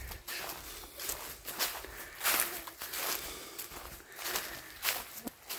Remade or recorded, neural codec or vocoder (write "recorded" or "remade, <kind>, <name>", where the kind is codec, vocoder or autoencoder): recorded